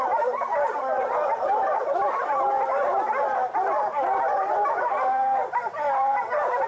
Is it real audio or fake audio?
real